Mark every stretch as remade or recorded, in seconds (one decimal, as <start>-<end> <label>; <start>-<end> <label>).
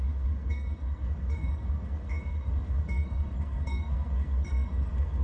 0.0-5.2 remade